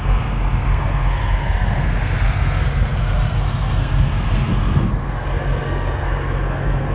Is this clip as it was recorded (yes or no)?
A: no